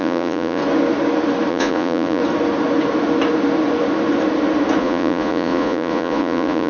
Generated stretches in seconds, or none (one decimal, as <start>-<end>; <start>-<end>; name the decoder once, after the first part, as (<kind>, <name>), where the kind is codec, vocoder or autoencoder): 0.0-0.6 (vocoder, Vocos); 1.5-2.2; 4.8-6.7